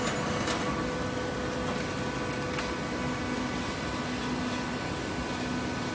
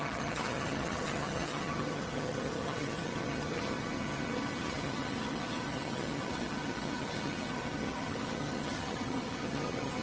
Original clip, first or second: first